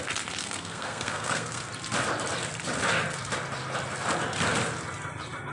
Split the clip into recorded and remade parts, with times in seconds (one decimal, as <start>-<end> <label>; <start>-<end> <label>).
0.0-0.4 recorded; 0.4-1.6 remade; 1.6-5.5 recorded